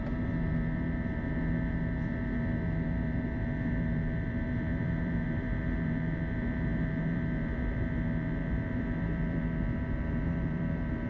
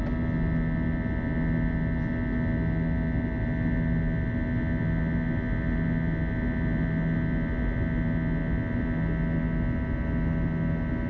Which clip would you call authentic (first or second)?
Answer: second